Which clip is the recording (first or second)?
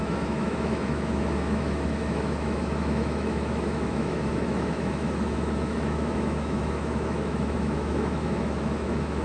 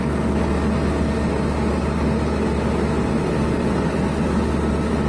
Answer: second